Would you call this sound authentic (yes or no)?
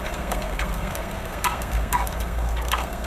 no